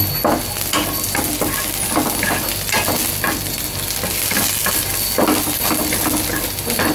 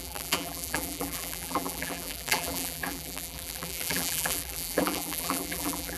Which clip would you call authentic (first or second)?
first